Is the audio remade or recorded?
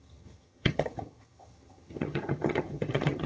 remade